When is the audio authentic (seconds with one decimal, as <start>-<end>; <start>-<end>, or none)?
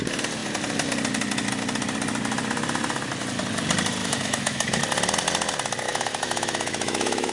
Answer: 0.0-4.0; 4.8-5.9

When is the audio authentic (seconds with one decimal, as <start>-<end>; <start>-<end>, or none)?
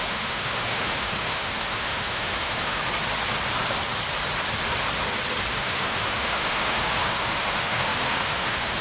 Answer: 2.8-5.5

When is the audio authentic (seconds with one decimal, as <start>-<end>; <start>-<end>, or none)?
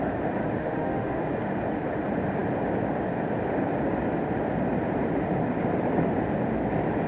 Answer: 0.0-0.6; 1.2-7.1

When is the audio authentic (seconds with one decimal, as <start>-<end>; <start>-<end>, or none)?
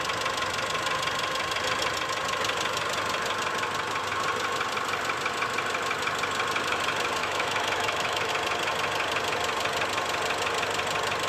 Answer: 0.0-7.2; 8.3-11.3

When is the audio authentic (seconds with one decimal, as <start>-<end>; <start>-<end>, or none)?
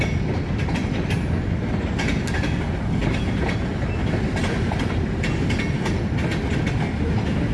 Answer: 0.0-7.5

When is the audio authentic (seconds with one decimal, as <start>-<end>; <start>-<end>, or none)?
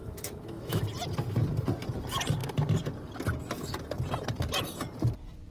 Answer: 0.8-5.5